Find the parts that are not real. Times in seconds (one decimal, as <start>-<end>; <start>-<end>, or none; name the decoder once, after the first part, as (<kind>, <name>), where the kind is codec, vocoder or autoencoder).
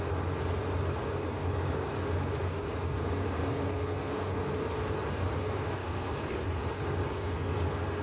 1.0-3.7 (codec, DAC); 5.8-6.4